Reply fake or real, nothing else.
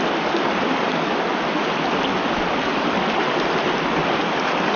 real